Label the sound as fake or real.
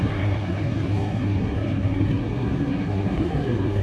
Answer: fake